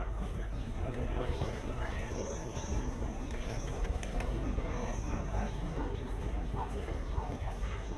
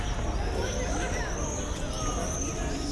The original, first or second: second